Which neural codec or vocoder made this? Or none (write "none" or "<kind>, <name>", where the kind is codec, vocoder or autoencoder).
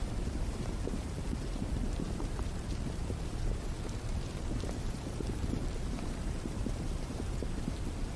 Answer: vocoder, BigVGAN v2